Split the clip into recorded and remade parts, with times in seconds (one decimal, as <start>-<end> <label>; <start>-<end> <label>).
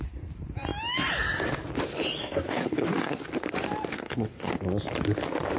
0.0-2.2 recorded; 2.2-3.2 remade; 3.2-3.9 recorded; 3.9-4.5 remade; 4.5-5.6 recorded